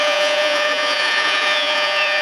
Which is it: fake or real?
fake